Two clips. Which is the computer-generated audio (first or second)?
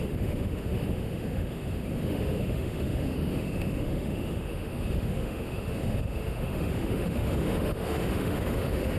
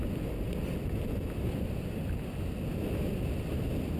first